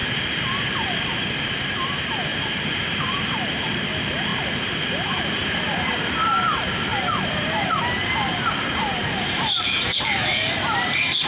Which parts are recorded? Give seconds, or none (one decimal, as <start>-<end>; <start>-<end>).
none

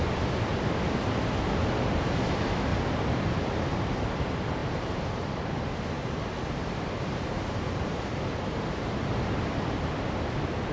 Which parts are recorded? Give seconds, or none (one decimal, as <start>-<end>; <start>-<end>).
0.0-0.5; 1.1-2.7; 3.2-4.6; 8.1-10.7

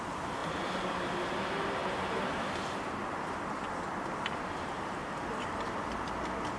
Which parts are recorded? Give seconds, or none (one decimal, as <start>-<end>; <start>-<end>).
3.0-3.9; 5.0-6.6